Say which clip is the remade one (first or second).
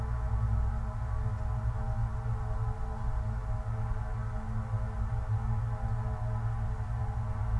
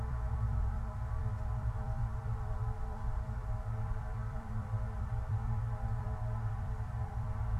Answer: second